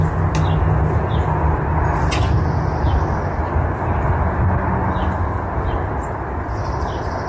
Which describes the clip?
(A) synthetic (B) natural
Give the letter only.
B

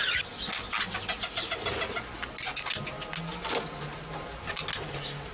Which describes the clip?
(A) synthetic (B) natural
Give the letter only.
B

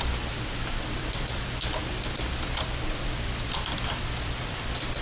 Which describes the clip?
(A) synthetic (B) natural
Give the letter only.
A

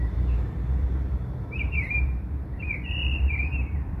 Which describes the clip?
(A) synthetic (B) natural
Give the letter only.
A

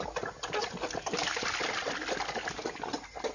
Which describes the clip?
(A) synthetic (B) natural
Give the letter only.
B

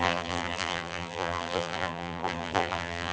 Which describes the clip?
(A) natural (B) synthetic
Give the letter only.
B